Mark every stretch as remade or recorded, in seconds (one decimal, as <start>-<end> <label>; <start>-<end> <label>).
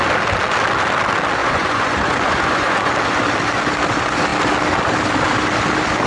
0.0-1.4 recorded; 1.4-2.9 remade; 2.9-6.1 recorded